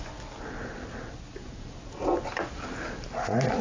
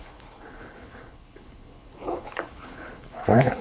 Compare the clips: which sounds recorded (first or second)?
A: first